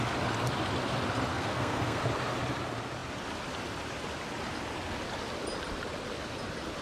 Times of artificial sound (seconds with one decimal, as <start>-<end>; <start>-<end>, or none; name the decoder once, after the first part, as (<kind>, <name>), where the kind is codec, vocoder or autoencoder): 1.3-2.0 (codec, SNAC)